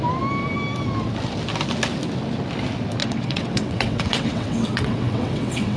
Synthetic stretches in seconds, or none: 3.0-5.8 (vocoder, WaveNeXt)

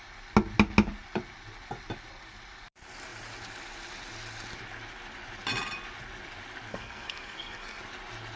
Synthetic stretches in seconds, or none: 6.7-7.8 (codec, SNAC)

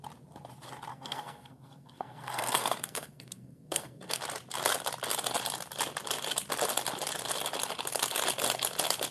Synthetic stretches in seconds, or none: 0.9-4.2 (codec, SNAC)

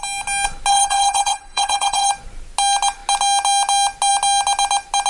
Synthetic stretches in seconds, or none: 0.7-2.1 (codec, HILCodec)

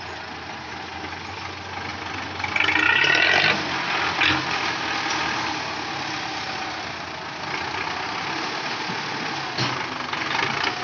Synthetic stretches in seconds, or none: none

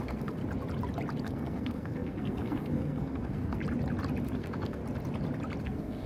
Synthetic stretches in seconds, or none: 0.0-0.4 (codec, SNAC); 1.2-3.6; 4.2-4.8; 5.6-6.1

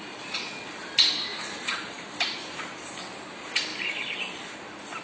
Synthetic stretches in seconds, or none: 1.3-2.6 (vocoder, BigVGAN v2); 3.7-4.5